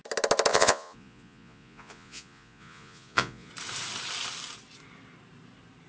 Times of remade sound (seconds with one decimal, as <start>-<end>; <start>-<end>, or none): 0.5-3.5